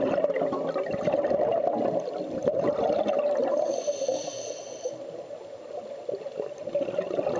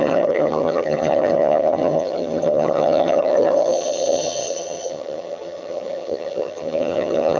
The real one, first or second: first